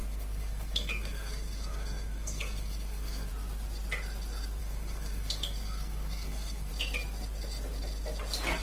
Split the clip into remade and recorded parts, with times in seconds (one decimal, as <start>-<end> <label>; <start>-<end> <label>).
0.0-3.3 remade; 3.3-4.6 recorded; 4.6-6.7 remade; 6.7-8.6 recorded

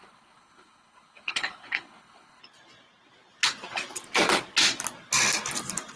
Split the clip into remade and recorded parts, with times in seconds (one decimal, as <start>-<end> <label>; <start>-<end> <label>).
0.0-2.4 remade; 2.4-6.0 recorded

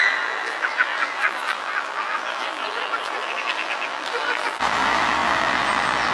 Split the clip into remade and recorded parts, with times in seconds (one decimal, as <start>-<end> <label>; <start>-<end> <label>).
0.0-6.1 remade

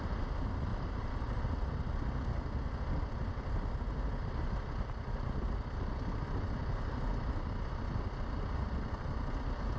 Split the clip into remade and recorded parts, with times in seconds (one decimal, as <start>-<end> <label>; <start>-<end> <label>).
0.0-0.7 recorded; 0.7-1.9 remade; 1.9-9.8 recorded

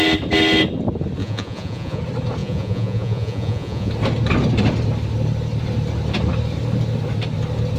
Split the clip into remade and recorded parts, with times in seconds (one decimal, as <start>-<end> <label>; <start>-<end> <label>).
0.0-1.2 recorded; 1.2-2.0 remade; 2.0-2.4 recorded; 2.4-3.9 remade; 3.9-7.8 recorded